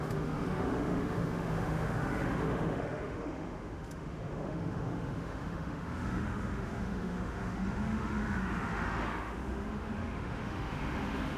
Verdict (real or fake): fake